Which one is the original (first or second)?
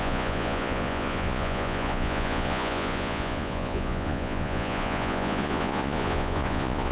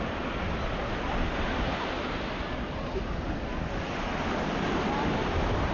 second